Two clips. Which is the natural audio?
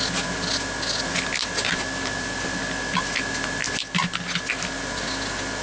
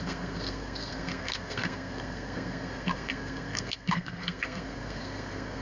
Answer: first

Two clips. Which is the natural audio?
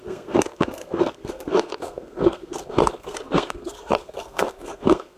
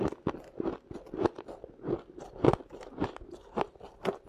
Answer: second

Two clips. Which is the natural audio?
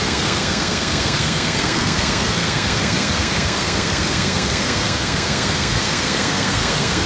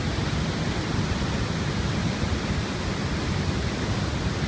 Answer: second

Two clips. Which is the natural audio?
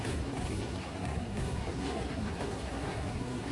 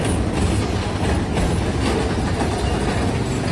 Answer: second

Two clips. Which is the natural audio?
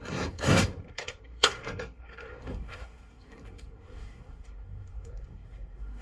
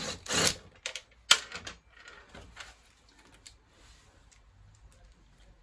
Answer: second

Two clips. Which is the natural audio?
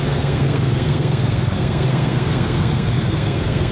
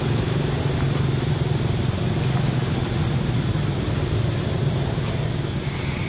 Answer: second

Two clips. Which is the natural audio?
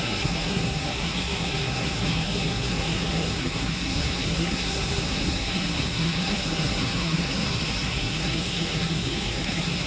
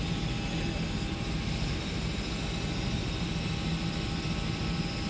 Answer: second